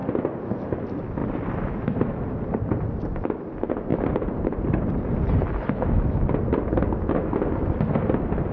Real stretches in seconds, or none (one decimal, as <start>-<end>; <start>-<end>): 0.0-1.2; 2.4-3.9; 5.8-8.5